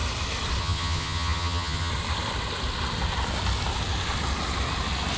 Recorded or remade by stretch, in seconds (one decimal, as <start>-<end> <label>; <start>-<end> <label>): 0.0-0.6 recorded; 0.6-1.9 remade; 1.9-5.2 recorded

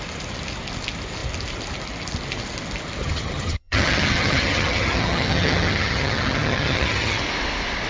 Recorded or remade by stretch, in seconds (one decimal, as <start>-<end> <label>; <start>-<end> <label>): 0.0-3.0 recorded; 3.0-7.2 remade; 7.2-7.9 recorded

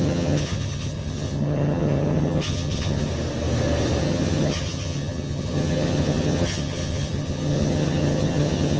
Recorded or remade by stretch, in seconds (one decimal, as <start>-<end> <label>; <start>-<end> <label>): 0.0-3.1 remade; 3.1-4.0 recorded; 4.0-8.8 remade

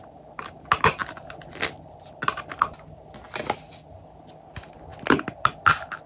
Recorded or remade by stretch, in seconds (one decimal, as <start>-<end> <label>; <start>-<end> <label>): 0.0-6.1 recorded

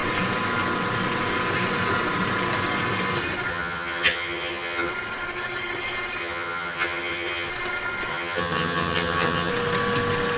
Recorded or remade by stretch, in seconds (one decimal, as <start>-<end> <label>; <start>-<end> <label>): 0.0-3.5 recorded; 3.5-4.9 remade; 4.9-6.2 recorded; 6.2-7.5 remade; 7.5-8.1 recorded; 8.1-9.5 remade; 9.5-10.4 recorded

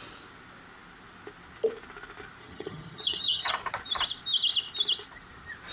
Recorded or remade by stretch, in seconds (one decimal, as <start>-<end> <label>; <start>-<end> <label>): 0.0-2.4 recorded; 2.4-3.5 remade; 3.5-5.7 recorded